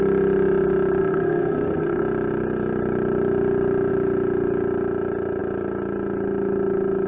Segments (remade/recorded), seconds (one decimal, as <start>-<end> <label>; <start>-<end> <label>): 0.0-1.0 recorded; 1.0-2.0 remade; 2.0-7.1 recorded